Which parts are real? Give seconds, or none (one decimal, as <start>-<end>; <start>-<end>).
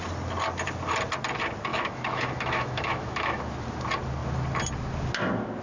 0.0-1.7; 3.4-5.6